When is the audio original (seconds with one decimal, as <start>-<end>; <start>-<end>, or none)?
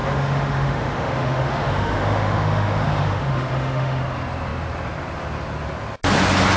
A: 4.0-6.6